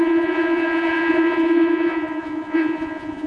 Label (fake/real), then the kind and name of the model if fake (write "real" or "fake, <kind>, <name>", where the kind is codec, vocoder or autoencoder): fake, vocoder, Vocos